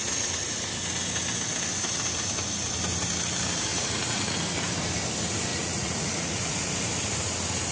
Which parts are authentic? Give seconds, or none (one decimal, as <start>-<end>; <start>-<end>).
0.0-3.7; 4.4-5.5; 6.7-7.7